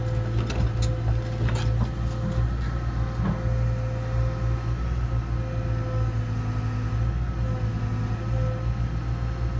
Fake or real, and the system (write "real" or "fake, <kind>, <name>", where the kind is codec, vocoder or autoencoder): real